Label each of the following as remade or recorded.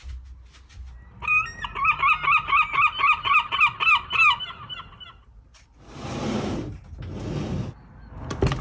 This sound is recorded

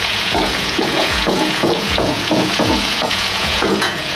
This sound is remade